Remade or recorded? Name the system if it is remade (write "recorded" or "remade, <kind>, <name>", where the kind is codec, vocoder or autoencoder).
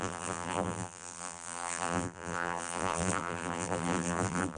remade, vocoder, BigVGAN v2